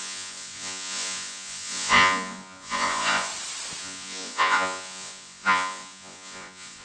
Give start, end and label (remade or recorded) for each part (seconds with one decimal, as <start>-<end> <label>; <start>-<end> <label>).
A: 0.0-3.3 remade; 3.3-3.8 recorded; 3.8-6.8 remade

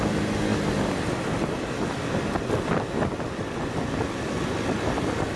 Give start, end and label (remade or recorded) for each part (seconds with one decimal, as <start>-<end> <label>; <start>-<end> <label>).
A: 0.0-5.4 recorded

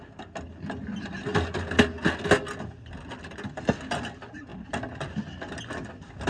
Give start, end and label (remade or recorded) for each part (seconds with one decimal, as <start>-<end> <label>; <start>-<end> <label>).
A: 0.0-6.3 recorded

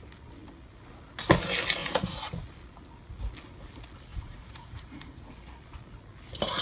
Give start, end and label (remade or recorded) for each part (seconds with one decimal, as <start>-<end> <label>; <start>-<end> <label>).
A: 0.0-1.8 recorded; 1.8-2.4 remade; 2.4-4.1 recorded; 4.1-5.3 remade; 5.3-6.6 recorded

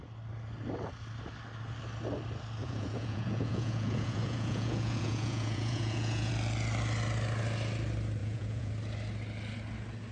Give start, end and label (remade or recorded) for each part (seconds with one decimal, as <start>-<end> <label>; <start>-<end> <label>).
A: 0.0-2.6 recorded; 2.6-6.3 remade; 6.3-8.2 recorded; 8.2-8.7 remade; 8.7-10.1 recorded

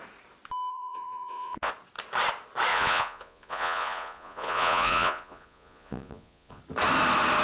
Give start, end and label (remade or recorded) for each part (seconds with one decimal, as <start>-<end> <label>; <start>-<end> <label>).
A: 0.0-0.7 recorded; 0.7-1.7 remade; 1.7-2.7 recorded; 2.7-6.6 remade; 6.6-7.4 recorded

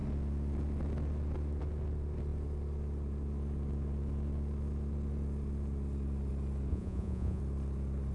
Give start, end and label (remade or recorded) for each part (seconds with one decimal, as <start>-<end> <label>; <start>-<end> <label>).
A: 0.0-6.7 recorded; 6.7-7.4 remade; 7.4-8.1 recorded

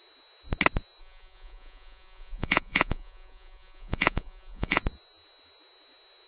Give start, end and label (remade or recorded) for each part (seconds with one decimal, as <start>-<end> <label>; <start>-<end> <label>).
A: 0.0-1.0 recorded; 1.0-4.8 remade; 4.8-6.3 recorded